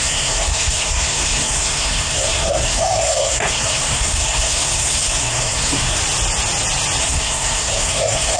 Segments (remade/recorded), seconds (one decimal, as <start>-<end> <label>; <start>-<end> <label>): 0.0-6.0 remade; 6.0-7.0 recorded; 7.0-8.4 remade